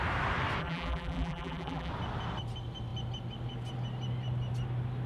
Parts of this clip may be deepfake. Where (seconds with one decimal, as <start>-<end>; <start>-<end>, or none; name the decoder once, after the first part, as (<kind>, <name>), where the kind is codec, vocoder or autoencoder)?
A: 0.6-1.9 (vocoder, BigVGAN v2)